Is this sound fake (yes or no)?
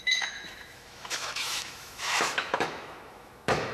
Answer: yes